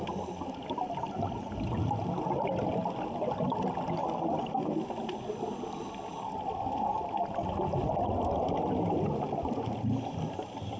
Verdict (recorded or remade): recorded